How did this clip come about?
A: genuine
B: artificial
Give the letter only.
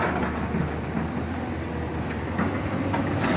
A